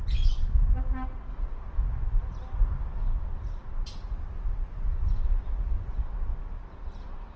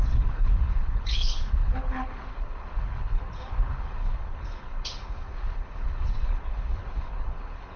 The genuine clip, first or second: first